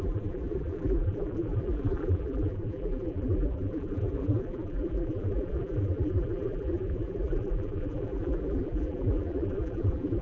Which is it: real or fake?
fake